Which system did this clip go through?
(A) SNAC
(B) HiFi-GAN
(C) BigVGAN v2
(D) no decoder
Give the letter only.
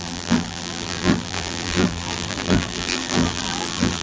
C